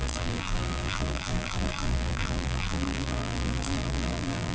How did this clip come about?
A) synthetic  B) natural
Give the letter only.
A